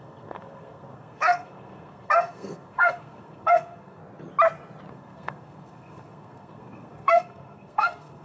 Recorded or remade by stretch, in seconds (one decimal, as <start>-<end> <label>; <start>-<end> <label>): 0.0-4.0 remade; 4.0-4.9 recorded; 4.9-8.2 remade